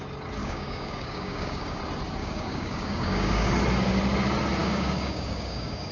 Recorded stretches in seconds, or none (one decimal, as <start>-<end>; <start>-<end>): 0.0-0.4; 1.8-2.2; 3.5-4.6